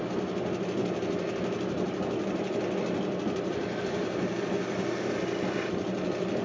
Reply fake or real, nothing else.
real